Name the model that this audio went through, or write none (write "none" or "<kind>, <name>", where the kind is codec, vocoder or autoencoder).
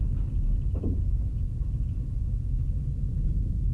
none